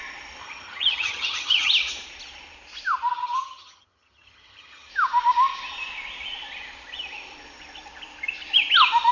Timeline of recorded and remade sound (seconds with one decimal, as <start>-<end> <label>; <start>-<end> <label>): 0.0-0.4 recorded; 0.4-1.7 remade; 1.7-3.1 recorded; 3.1-4.9 remade; 4.9-9.1 recorded